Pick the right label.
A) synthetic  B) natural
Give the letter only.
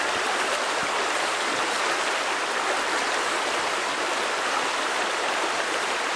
B